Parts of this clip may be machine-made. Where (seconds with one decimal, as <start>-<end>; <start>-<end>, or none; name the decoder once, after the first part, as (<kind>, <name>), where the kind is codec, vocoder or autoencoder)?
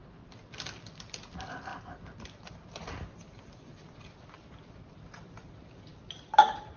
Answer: none